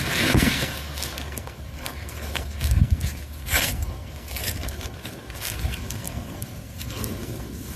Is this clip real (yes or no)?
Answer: no